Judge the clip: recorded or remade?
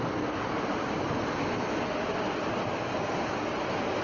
recorded